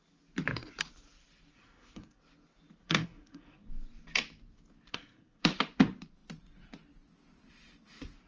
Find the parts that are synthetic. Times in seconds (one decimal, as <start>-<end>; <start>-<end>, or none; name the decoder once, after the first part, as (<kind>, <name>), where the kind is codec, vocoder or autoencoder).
1.5-2.2 (codec, SNAC); 2.8-3.7; 4.9-5.5

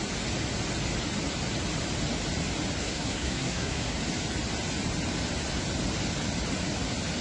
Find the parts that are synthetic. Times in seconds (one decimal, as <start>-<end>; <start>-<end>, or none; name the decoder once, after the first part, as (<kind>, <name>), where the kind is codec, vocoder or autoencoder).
2.8-4.0 (codec, SNAC)